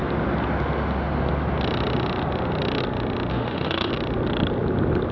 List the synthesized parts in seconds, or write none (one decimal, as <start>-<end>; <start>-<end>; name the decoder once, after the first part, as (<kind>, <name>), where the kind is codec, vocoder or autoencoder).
3.3-3.9 (autoencoder, DAC-VAE)